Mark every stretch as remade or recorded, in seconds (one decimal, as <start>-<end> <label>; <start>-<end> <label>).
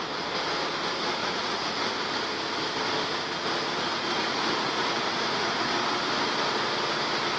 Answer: 0.0-1.2 recorded; 1.2-2.3 remade; 2.3-3.9 recorded; 3.9-5.7 remade; 5.7-7.4 recorded